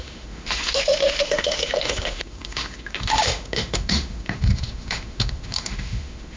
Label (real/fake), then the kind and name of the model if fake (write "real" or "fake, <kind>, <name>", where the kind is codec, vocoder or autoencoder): fake, autoencoder, DAC-VAE